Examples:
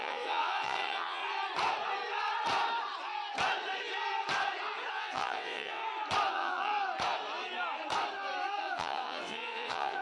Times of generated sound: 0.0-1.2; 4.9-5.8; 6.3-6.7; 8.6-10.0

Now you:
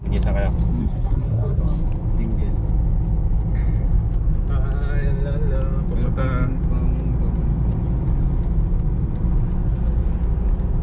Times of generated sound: 0.8-1.6

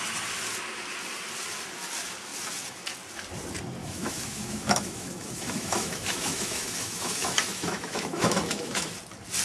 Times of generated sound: 3.8-8.9